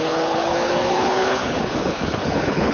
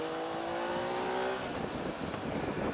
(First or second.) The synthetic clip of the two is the first